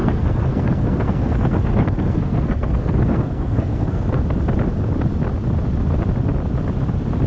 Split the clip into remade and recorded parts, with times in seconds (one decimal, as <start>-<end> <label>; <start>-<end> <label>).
0.0-4.2 remade; 4.2-7.3 recorded